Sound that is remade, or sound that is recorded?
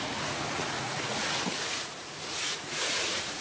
remade